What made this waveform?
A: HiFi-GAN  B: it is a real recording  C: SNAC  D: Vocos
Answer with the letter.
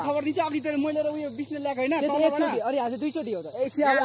B